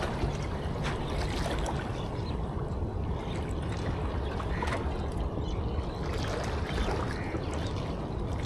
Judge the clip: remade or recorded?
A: recorded